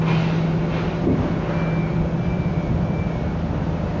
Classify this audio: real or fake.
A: real